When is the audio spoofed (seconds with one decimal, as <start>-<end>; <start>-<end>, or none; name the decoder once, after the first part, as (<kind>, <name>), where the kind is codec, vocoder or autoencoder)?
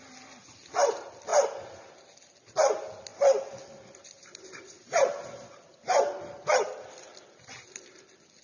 none